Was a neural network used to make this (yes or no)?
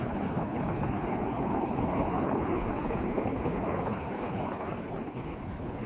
yes